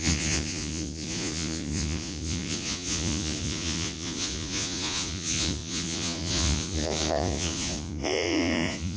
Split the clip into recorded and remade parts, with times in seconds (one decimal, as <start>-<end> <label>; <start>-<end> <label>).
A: 0.0-9.0 remade